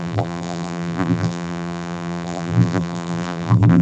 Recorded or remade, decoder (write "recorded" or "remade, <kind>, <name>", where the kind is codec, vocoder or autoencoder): remade, vocoder, BigVGAN v2